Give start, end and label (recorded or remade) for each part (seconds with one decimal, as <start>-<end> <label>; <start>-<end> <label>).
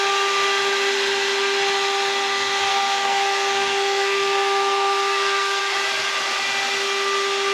0.0-2.7 recorded; 2.7-5.6 remade; 5.6-7.5 recorded